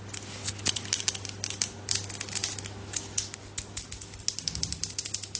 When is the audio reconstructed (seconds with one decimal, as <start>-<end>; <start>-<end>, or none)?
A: none